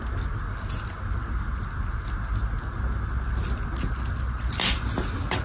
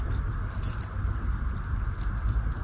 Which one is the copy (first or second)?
second